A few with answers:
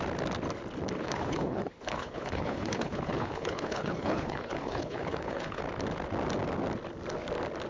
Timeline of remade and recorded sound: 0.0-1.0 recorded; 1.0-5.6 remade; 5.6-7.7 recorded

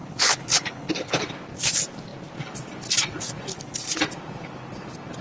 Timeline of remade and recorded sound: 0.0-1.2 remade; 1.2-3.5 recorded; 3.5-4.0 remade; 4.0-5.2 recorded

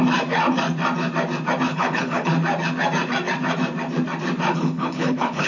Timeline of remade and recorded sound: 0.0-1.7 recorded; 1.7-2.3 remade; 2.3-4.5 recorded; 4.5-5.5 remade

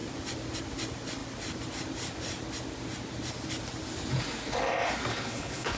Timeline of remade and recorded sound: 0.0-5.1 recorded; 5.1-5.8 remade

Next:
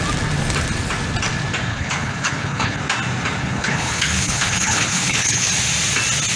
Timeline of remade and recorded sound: 0.0-1.7 recorded; 1.7-2.8 remade; 2.8-3.4 recorded; 3.4-5.5 remade; 5.5-6.4 recorded

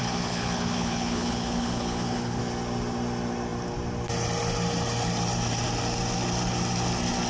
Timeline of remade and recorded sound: 0.0-2.4 remade; 2.4-7.3 recorded

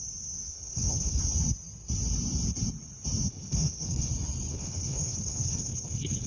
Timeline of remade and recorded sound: 0.0-0.5 recorded; 0.5-1.2 remade; 1.2-3.3 recorded; 3.3-4.1 remade; 4.1-4.5 recorded; 4.5-6.3 remade